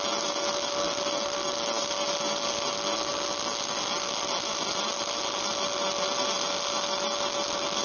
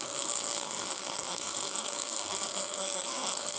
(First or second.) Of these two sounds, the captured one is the first